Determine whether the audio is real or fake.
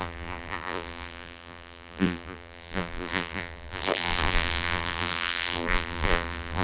fake